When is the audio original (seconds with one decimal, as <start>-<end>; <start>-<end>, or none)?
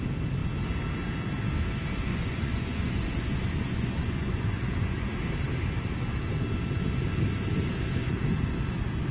0.0-2.1; 5.1-9.1